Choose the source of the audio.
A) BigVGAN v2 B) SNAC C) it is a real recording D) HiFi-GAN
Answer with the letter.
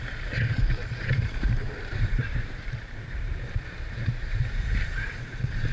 A